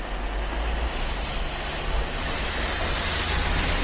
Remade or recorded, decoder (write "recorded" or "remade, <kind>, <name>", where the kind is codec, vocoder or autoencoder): recorded